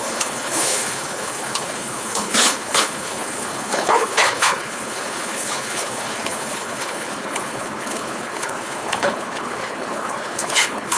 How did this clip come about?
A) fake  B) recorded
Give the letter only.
A